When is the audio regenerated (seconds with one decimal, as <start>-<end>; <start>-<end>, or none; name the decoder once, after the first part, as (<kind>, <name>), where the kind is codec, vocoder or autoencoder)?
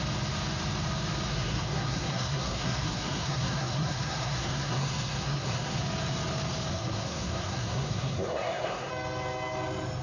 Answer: 1.3-5.8 (codec, SNAC); 6.7-8.9